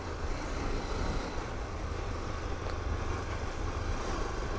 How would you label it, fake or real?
real